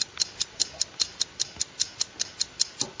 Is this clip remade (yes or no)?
no